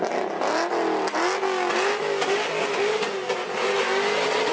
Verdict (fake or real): real